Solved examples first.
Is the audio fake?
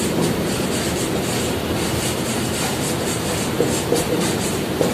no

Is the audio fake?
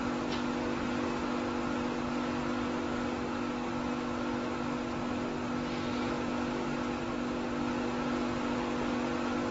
no